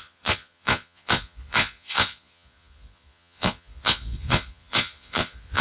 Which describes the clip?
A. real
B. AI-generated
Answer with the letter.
B